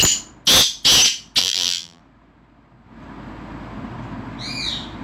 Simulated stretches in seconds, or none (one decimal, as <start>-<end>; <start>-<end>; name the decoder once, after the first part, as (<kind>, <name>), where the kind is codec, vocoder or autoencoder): 1.4-2.0 (vocoder, BigVGAN v2)